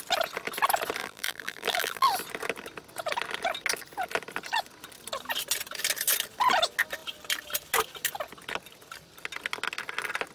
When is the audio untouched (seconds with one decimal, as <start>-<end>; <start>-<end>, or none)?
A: 0.0-1.0; 2.1-10.3